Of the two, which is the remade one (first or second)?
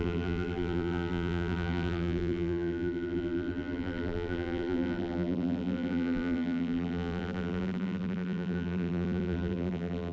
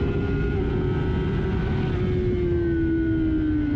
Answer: first